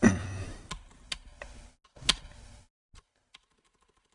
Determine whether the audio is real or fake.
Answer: real